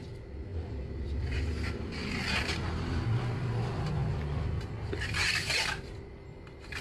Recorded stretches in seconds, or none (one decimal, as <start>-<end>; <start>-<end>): 0.0-6.8